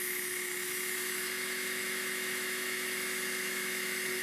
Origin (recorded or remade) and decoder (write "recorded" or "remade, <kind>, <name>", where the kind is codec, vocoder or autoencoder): remade, autoencoder, DAC-VAE